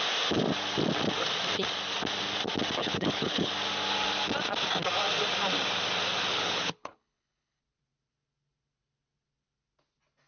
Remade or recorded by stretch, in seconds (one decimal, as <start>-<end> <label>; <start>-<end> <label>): 0.0-2.8 recorded; 2.8-3.5 remade; 3.5-6.3 recorded; 6.3-7.6 remade; 7.6-10.3 recorded